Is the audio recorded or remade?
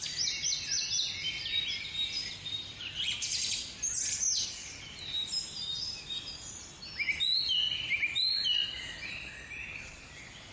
recorded